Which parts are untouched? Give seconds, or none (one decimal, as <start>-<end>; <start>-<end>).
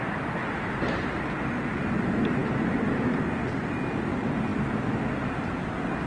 0.0-6.1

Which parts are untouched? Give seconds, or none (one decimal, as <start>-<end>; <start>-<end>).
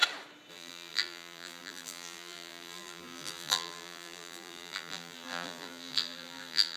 0.0-0.5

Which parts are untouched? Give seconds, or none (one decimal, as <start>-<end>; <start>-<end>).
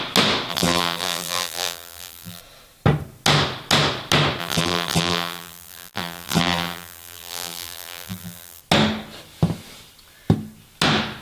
0.0-0.5; 2.4-4.4; 8.6-11.2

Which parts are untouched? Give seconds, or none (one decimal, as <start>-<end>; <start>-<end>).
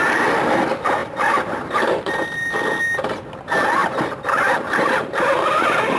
0.0-1.0; 2.1-3.8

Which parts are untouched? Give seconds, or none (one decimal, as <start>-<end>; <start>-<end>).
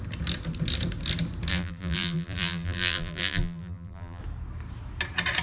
0.0-1.5; 4.2-5.4